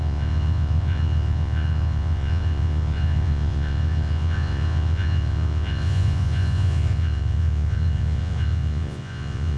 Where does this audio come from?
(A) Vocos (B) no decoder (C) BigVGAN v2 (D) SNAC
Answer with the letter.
A